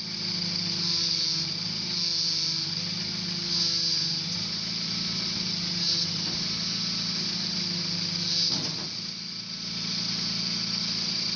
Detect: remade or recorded recorded